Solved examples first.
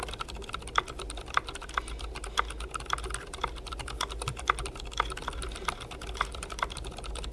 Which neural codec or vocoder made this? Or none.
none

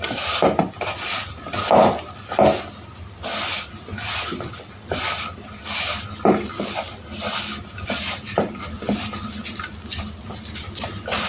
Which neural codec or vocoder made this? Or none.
none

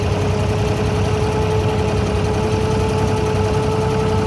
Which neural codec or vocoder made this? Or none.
none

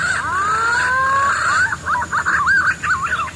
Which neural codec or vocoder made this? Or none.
none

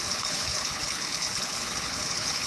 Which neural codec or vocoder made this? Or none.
codec, HILCodec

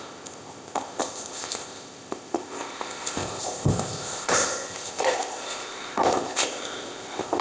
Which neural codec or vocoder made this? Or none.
codec, ZipCodec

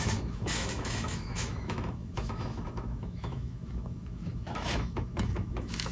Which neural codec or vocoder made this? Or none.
autoencoder, DAC-VAE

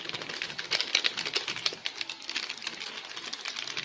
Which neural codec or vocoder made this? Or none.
none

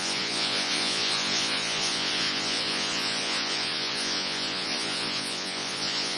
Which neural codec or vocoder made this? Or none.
vocoder, Vocos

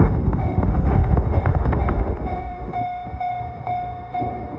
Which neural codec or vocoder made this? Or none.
autoencoder, DAC-VAE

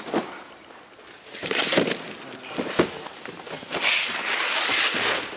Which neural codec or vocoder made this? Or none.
none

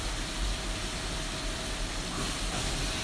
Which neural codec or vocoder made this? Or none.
vocoder, BigVGAN v2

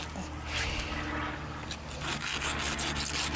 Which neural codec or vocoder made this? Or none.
none